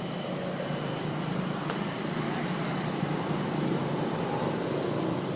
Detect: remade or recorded recorded